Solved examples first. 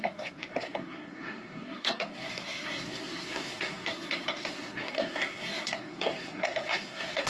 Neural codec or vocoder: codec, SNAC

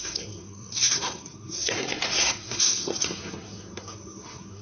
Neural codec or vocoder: codec, SNAC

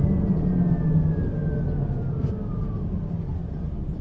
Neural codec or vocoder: none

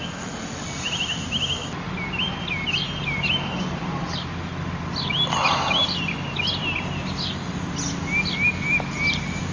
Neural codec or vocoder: none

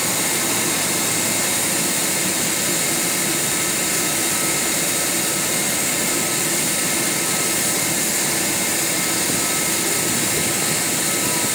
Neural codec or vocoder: none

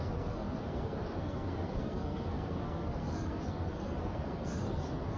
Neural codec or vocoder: codec, SNAC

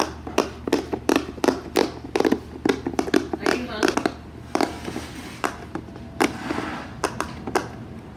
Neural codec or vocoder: none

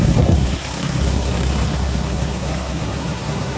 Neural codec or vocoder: codec, SNAC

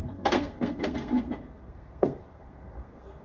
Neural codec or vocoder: codec, SNAC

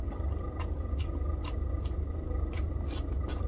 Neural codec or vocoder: none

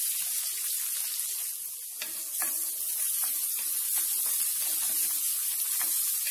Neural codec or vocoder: none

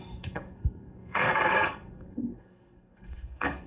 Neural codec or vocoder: codec, SNAC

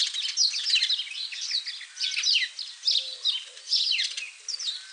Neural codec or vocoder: none